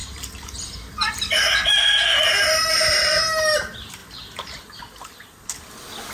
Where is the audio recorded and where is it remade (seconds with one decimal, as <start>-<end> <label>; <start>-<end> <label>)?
0.0-6.1 recorded